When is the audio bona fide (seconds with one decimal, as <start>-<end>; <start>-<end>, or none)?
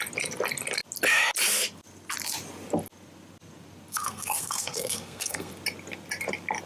0.0-3.9; 5.5-6.7